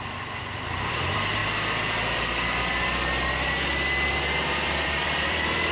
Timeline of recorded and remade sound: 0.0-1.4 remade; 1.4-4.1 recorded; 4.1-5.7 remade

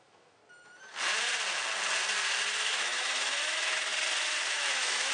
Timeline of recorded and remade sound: 0.0-0.4 remade; 0.4-2.6 recorded; 2.6-3.9 remade; 3.9-4.5 recorded; 4.5-5.1 remade

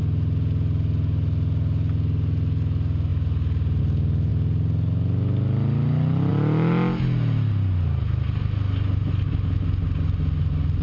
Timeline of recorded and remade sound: 0.0-10.8 recorded

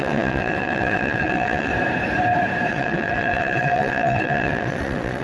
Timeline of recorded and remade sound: 0.0-1.7 remade; 1.7-2.7 recorded; 2.7-5.2 remade

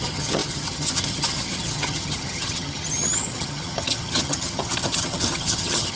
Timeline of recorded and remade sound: 0.0-6.0 remade

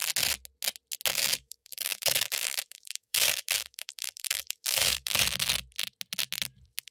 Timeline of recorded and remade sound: 0.0-1.1 recorded; 1.1-5.2 remade; 5.2-6.9 recorded